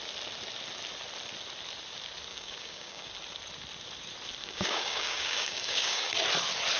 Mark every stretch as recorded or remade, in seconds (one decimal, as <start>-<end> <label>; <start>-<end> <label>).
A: 0.0-2.3 recorded; 2.3-3.1 remade; 3.1-4.4 recorded; 4.4-6.1 remade; 6.1-6.8 recorded